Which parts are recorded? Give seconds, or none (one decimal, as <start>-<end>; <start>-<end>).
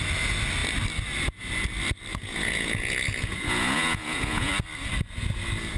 0.0-2.1; 4.5-5.8